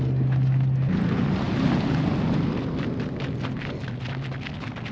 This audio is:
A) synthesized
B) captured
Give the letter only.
B